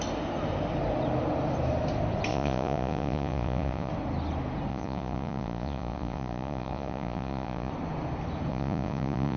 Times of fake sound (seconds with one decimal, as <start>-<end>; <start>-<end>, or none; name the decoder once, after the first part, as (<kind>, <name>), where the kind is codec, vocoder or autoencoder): 2.3-3.9 (vocoder, Vocos); 4.7-7.7; 8.5-9.4